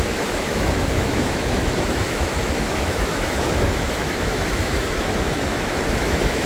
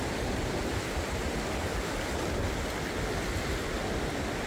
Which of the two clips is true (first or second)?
second